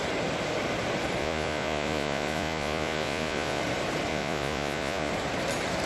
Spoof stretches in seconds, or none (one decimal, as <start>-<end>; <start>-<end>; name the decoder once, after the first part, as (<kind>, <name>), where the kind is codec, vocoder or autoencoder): 1.2-3.6 (vocoder, Vocos); 4.1-5.1